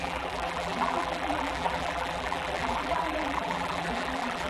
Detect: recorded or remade remade